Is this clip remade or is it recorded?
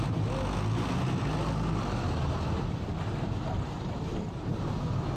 recorded